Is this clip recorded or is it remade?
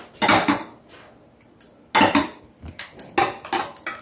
recorded